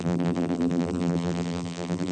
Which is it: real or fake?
fake